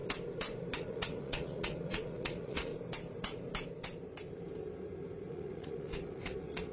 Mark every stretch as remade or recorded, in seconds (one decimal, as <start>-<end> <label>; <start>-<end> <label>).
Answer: 0.0-0.8 recorded; 0.8-2.7 remade; 2.7-5.3 recorded; 5.3-6.7 remade